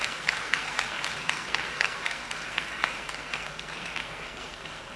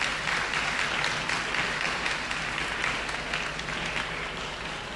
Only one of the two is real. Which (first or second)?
second